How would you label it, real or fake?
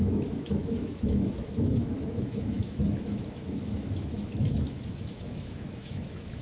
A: fake